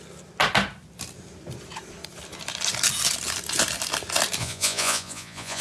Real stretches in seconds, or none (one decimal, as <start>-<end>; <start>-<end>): 0.0-4.4